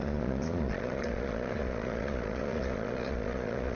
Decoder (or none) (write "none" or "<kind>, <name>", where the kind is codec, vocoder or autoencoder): vocoder, Vocos